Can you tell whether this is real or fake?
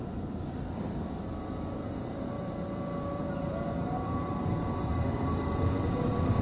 fake